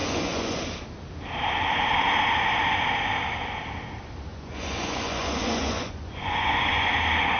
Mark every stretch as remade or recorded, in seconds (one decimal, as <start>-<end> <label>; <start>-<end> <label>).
0.0-0.6 remade; 0.6-4.3 recorded; 4.3-6.9 remade; 6.9-7.4 recorded